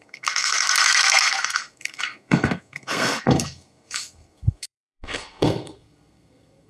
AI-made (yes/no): yes